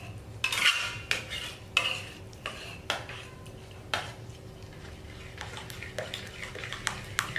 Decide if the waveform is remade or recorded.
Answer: recorded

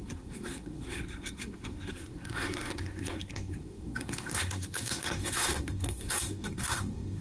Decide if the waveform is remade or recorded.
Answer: remade